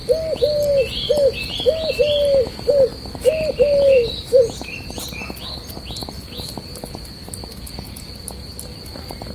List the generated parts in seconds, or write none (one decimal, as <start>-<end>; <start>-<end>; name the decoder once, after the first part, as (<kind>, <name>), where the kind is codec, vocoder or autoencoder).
none